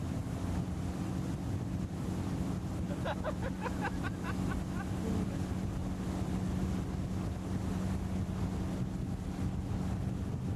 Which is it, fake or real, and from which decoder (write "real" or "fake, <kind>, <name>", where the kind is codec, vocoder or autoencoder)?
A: real